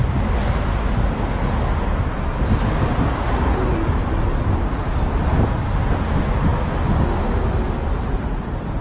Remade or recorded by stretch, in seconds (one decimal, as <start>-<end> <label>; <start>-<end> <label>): 0.0-8.8 recorded